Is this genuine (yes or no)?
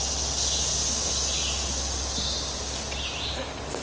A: yes